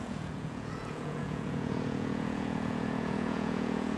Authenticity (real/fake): fake